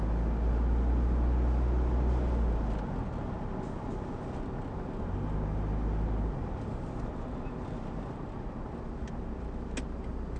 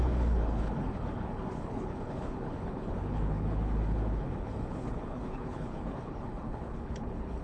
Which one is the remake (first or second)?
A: second